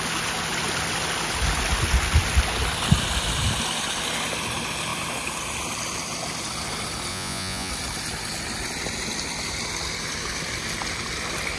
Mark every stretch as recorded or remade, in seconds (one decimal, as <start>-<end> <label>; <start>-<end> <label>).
0.0-7.1 recorded; 7.1-7.7 remade; 7.7-11.6 recorded